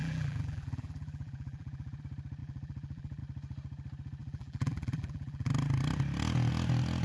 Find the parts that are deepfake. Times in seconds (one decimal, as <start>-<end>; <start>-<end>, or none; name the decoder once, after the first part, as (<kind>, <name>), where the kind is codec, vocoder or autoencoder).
0.0-2.0 (vocoder, BigVGAN v2); 2.4-3.2; 4.2-5.5